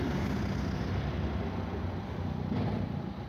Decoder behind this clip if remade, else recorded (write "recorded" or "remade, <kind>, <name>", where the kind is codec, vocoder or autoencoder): recorded